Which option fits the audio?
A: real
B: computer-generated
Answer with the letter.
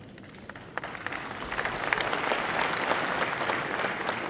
A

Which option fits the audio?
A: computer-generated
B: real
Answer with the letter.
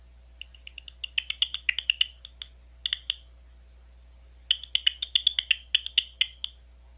B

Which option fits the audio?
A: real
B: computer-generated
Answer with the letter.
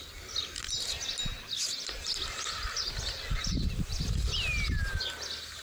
A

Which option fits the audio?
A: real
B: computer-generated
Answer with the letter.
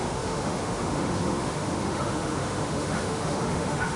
B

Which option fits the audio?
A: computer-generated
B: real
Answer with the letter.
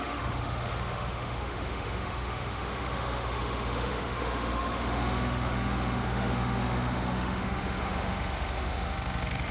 A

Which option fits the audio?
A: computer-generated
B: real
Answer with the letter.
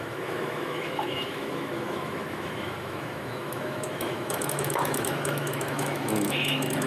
A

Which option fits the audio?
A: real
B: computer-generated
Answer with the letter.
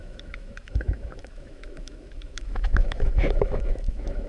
B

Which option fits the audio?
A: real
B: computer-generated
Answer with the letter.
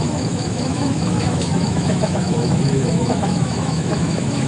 B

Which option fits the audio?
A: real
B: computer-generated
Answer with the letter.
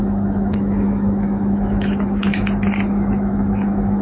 B